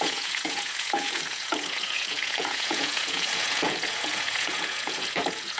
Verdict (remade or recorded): remade